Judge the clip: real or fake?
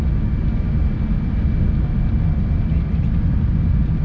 real